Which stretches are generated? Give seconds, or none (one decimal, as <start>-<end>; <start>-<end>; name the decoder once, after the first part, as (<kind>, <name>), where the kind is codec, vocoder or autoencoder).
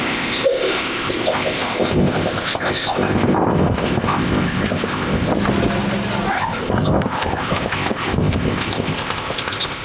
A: 0.0-5.3 (codec, ZipCodec); 6.3-9.8